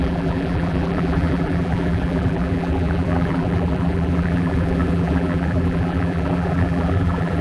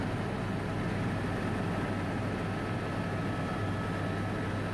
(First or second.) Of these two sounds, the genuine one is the second